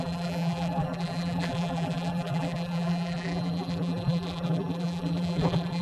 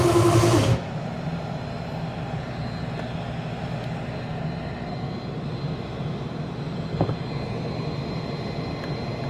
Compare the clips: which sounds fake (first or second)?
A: first